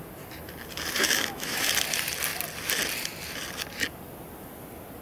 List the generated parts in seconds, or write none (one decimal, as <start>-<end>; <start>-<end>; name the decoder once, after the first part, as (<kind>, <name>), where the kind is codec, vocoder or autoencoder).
1.0-1.7 (autoencoder, DAC-VAE)